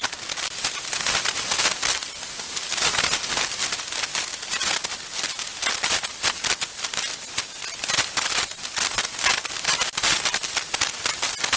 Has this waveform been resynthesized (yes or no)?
no